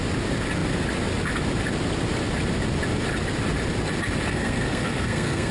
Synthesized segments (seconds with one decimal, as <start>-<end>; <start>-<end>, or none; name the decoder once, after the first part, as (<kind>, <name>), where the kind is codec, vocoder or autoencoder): 4.3-5.5 (codec, SNAC)